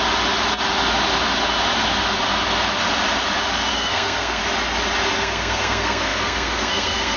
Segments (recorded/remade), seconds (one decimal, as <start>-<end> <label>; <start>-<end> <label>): 0.0-3.7 recorded; 3.7-4.4 remade; 4.4-5.2 recorded; 5.2-7.2 remade

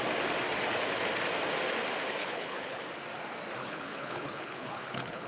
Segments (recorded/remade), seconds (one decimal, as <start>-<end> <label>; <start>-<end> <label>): 0.0-2.2 recorded; 2.2-2.8 remade; 2.8-3.6 recorded; 3.6-5.3 remade